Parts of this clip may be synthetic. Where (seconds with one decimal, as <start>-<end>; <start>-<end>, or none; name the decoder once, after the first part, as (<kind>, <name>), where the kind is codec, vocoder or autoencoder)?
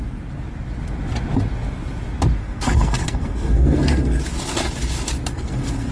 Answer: 2.4-4.2 (codec, SNAC); 5.3-5.9